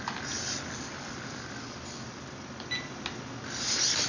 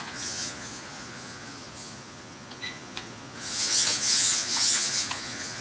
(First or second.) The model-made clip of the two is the second